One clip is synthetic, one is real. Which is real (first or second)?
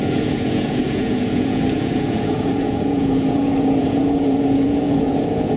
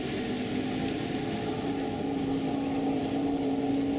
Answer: second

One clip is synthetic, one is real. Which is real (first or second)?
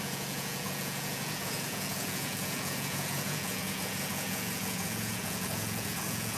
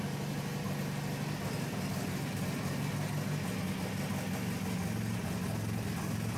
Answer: second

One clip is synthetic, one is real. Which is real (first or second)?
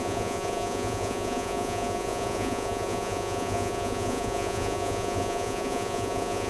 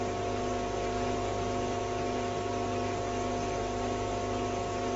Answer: second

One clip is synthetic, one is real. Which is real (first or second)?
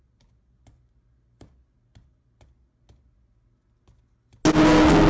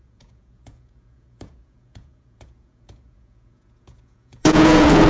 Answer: first